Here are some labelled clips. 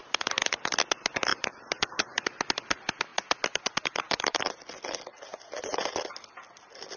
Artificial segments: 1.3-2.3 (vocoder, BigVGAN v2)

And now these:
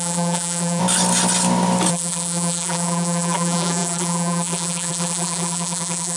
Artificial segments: 0.0-0.8 (vocoder, BigVGAN v2); 1.9-6.2

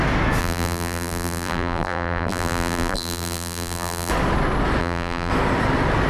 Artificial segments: 0.4-4.1 (vocoder, BigVGAN v2); 4.8-5.3

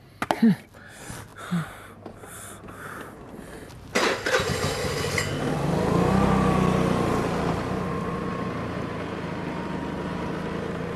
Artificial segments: 8.3-10.3 (vocoder, BigVGAN v2)